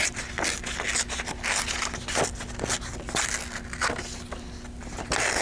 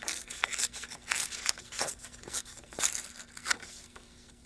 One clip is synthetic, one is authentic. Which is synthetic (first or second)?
second